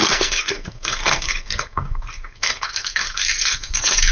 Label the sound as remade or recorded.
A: remade